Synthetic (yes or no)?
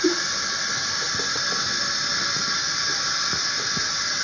no